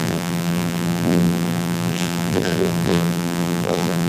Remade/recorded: remade